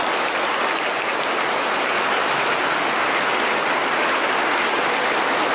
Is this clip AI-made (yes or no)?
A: no